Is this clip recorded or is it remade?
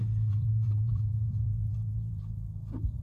remade